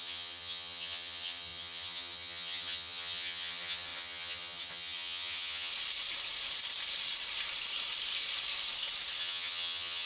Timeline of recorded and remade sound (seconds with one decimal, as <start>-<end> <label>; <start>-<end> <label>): 0.0-5.7 remade; 5.7-9.2 recorded; 9.2-10.1 remade